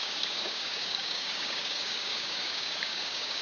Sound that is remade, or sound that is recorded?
remade